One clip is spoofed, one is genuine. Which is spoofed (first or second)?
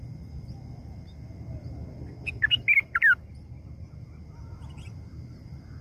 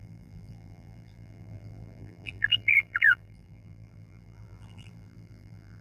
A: second